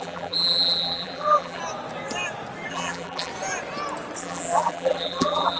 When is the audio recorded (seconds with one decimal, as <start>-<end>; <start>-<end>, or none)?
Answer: 1.6-2.7; 3.3-4.2